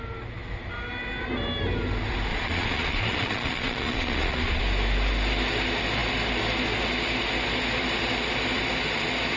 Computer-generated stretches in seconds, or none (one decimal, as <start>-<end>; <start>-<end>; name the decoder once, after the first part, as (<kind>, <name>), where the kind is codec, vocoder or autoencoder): 2.3-4.6 (vocoder, Vocos)